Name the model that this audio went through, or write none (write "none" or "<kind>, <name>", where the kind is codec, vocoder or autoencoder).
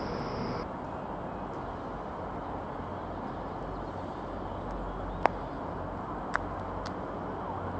none